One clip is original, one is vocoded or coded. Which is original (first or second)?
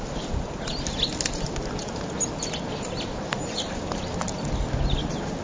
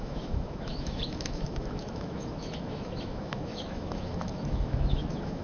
first